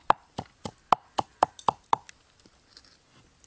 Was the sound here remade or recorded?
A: recorded